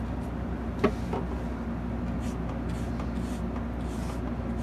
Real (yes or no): yes